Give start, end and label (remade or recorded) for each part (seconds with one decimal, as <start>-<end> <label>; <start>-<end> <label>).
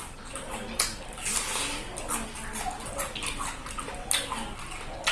0.0-3.2 recorded; 3.2-3.9 remade; 3.9-5.1 recorded